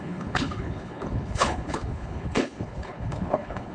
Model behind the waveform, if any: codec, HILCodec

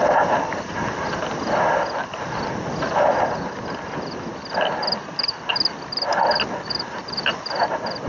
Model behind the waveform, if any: none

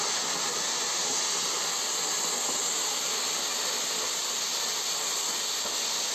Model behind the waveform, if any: none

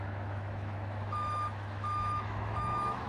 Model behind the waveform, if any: autoencoder, DAC-VAE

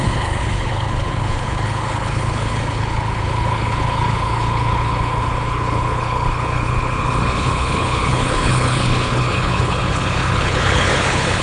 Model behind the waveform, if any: codec, HILCodec